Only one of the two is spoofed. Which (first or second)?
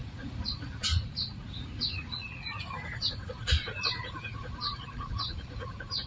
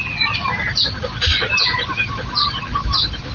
first